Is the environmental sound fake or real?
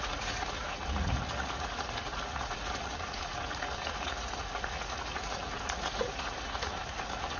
fake